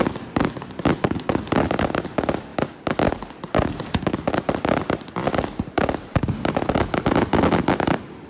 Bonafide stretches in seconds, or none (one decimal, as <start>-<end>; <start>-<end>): 0.0-8.3